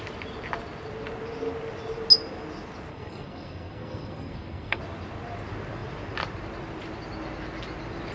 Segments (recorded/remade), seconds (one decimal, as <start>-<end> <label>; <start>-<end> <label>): 0.0-2.9 recorded; 2.9-4.8 remade; 4.8-8.1 recorded

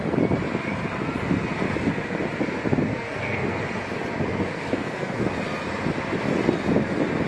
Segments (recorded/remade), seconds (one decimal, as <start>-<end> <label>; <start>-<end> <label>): 0.0-2.9 recorded; 2.9-3.6 remade; 3.6-4.3 recorded; 4.3-5.2 remade; 5.2-7.3 recorded

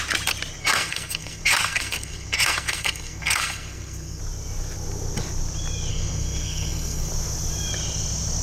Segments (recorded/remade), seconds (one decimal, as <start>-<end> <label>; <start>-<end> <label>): 0.0-0.6 recorded; 0.6-4.2 remade; 4.2-5.9 recorded; 5.9-7.1 remade; 7.1-8.4 recorded

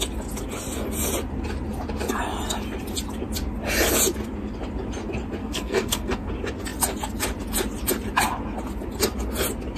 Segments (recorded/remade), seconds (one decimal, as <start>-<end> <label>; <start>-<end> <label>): 0.0-5.4 recorded; 5.4-6.3 remade; 6.3-9.8 recorded